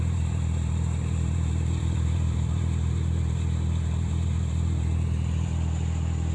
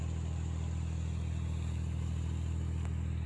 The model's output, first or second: first